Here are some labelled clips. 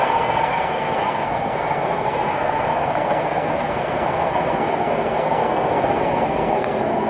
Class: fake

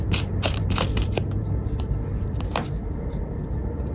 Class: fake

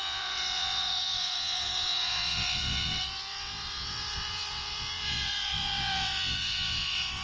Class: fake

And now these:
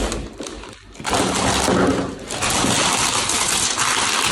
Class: real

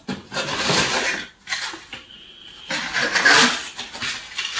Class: real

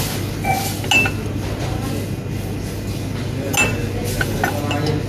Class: real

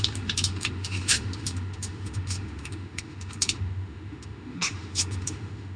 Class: fake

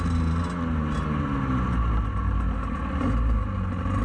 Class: real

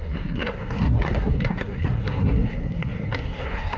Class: fake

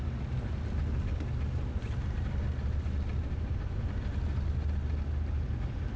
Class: real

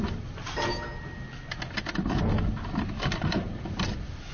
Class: real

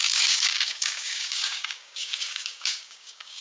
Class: fake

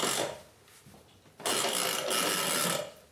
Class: real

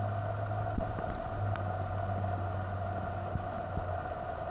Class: real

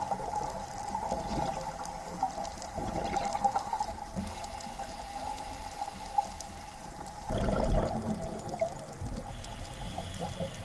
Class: real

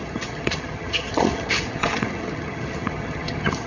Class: fake